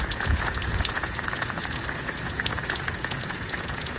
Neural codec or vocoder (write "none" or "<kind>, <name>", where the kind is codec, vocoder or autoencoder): vocoder, Vocos